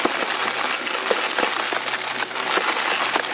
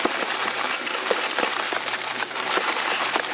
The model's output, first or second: second